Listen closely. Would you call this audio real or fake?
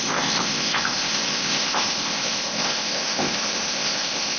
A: fake